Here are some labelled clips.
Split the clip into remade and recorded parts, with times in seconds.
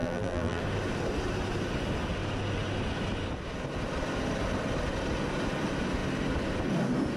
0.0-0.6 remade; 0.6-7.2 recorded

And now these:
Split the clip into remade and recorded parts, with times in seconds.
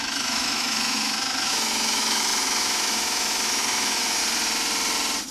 0.0-4.2 remade; 4.2-5.3 recorded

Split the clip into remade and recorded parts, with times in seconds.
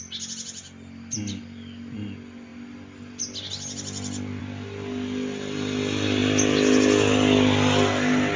0.0-8.4 recorded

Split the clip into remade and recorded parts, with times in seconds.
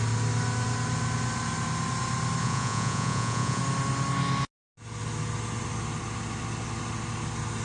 0.0-2.4 recorded; 2.4-3.6 remade; 3.6-7.6 recorded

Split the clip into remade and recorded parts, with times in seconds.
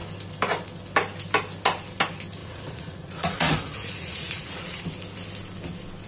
0.0-2.4 recorded; 2.4-4.8 remade; 4.8-6.1 recorded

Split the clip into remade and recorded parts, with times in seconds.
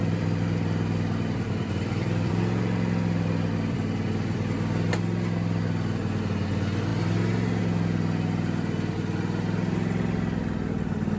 0.0-2.3 remade; 2.3-11.2 recorded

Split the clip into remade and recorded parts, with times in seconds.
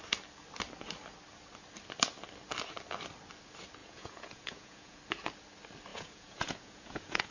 0.0-3.8 recorded; 3.8-5.0 remade; 5.0-5.9 recorded; 5.9-7.3 remade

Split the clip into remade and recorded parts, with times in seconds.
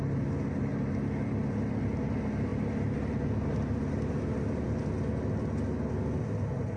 0.0-6.8 recorded